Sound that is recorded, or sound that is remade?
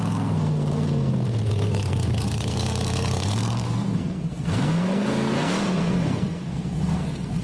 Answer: remade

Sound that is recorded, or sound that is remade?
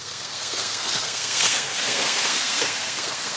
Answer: remade